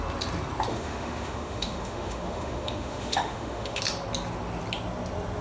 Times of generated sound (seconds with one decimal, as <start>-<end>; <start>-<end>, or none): 0.7-3.8